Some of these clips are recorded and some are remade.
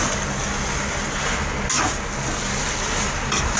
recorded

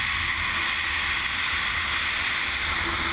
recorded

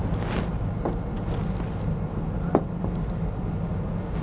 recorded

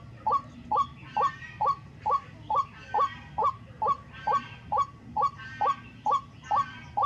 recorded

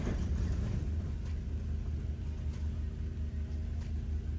recorded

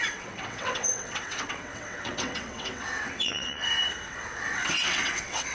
remade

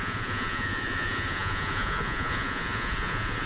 remade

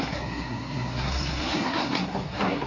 remade